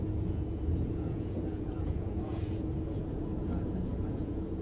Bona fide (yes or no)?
no